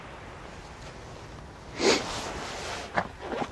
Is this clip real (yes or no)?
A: yes